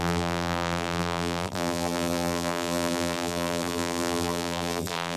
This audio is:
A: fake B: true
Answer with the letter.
A